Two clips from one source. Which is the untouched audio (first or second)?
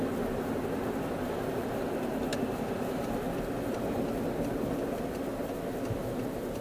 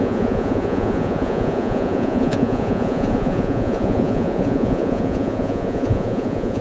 first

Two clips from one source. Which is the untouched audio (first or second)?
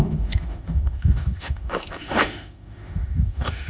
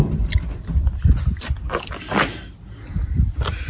second